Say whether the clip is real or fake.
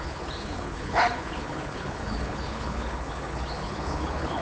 fake